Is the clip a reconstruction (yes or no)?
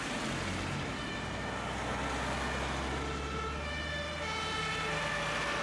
no